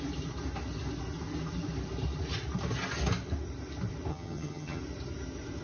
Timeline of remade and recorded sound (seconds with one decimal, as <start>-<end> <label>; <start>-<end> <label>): 0.0-4.1 recorded; 4.1-4.8 remade; 4.8-5.6 recorded